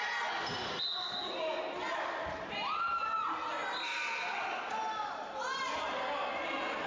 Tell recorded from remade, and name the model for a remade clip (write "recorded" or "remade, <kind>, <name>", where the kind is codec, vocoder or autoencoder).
recorded